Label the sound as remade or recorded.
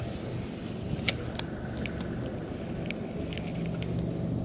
recorded